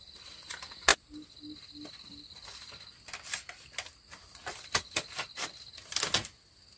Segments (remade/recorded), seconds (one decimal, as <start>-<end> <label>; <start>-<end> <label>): 0.0-6.8 recorded

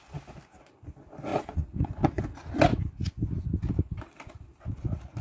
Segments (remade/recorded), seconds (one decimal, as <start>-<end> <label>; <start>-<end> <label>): 0.0-1.3 recorded; 1.3-2.2 remade; 2.2-5.2 recorded

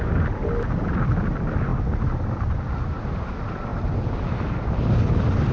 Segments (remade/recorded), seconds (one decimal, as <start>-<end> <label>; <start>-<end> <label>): 0.0-5.5 recorded